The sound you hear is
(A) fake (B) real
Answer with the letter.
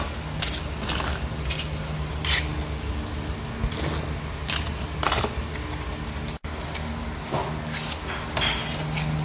B